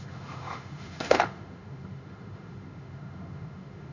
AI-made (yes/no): yes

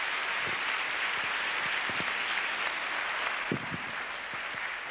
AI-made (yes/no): no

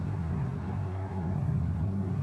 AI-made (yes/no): yes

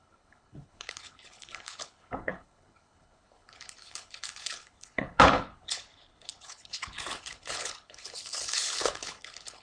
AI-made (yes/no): yes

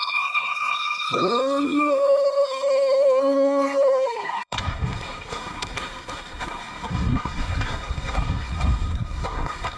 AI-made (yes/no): yes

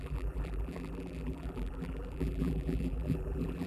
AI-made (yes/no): yes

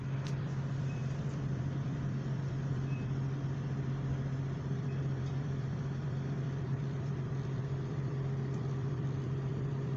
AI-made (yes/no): yes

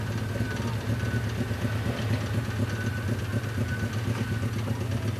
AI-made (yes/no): no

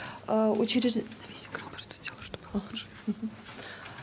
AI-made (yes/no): no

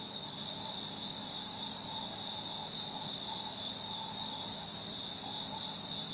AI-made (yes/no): no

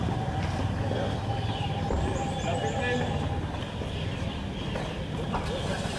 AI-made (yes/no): no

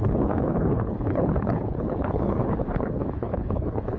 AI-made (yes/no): yes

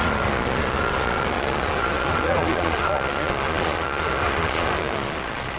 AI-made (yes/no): yes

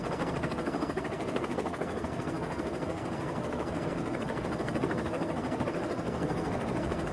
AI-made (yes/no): yes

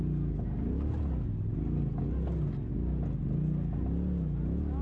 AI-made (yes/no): no